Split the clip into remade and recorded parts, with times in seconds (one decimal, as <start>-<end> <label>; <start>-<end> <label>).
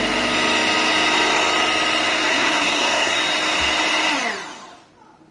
0.0-2.3 recorded; 2.3-3.2 remade; 3.2-5.3 recorded